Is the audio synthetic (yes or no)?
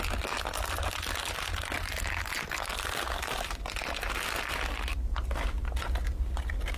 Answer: no